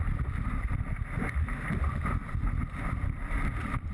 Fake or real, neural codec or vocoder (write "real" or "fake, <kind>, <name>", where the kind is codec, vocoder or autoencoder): fake, vocoder, BigVGAN v2